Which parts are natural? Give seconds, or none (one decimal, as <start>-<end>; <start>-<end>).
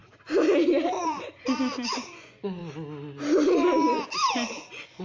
0.0-1.0; 2.6-4.5